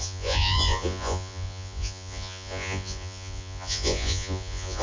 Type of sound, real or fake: fake